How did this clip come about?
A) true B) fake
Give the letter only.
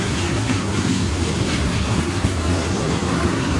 B